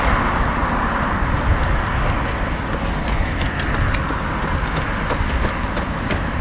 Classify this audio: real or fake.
real